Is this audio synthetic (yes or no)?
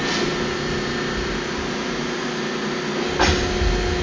no